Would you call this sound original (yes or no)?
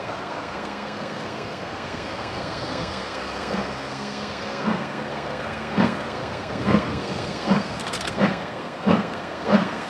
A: no